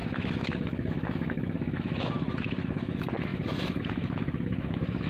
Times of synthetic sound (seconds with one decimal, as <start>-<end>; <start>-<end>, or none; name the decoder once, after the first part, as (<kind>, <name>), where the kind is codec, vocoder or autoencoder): 0.0-5.1 (autoencoder, DAC-VAE)

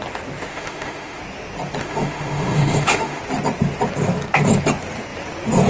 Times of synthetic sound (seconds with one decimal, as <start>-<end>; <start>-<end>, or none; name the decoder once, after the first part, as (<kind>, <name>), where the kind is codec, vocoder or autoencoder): 0.5-1.2 (autoencoder, DAC-VAE); 1.8-3.2

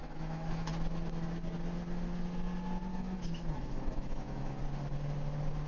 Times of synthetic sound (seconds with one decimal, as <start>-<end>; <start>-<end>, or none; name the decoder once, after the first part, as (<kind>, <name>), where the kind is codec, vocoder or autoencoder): 0.0-0.7 (autoencoder, DAC-VAE); 2.9-4.6

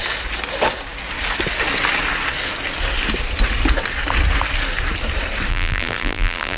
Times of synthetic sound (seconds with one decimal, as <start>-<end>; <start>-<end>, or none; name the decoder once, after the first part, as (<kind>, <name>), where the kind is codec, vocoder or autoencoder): 5.5-6.6 (vocoder, BigVGAN v2)

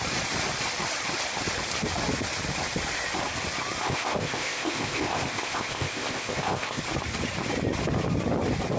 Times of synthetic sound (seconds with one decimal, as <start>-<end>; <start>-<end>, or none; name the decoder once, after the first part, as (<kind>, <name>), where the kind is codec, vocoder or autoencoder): 3.8-6.8 (codec, ZipCodec)

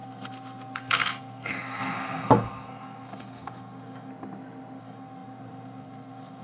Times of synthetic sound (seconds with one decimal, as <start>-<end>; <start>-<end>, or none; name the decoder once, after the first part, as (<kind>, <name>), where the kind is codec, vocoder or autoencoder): 0.0-4.1 (codec, SNAC); 4.8-6.4